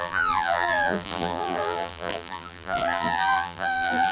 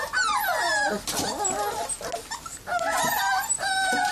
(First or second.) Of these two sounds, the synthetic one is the first